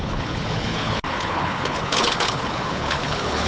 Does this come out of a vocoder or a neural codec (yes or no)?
yes